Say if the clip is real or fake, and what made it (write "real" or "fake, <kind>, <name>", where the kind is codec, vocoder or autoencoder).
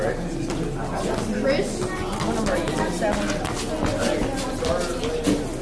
real